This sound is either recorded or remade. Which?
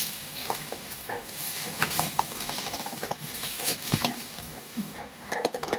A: remade